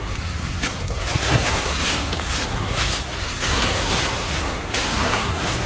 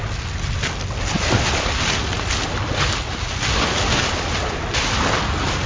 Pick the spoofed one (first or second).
first